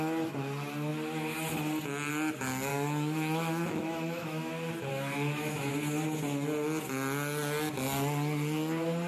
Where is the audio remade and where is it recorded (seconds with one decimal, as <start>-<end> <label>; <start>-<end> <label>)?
0.0-2.7 recorded; 2.7-4.5 remade; 4.5-4.9 recorded; 4.9-5.7 remade; 5.7-9.1 recorded